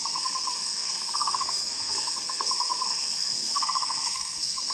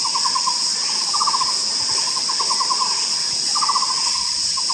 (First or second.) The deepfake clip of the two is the first